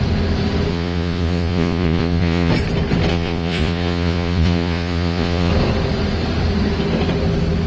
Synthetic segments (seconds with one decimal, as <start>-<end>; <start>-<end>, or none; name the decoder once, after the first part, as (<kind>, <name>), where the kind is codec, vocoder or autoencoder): 0.7-2.5 (vocoder, Vocos); 3.1-5.5